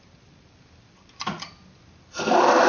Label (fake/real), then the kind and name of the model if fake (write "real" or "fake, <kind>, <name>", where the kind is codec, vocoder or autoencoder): real